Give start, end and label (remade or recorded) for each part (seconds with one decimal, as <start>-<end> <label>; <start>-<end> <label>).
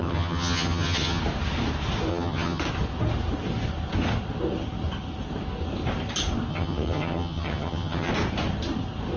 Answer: 0.0-1.2 remade; 1.2-2.1 recorded; 2.1-2.6 remade; 2.6-6.5 recorded; 6.5-8.1 remade; 8.1-9.2 recorded